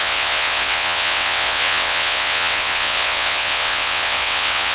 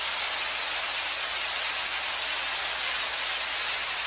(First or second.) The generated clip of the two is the first